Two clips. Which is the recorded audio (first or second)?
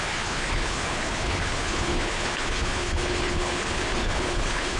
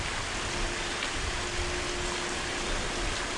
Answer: second